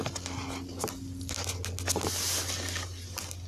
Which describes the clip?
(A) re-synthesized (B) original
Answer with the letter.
B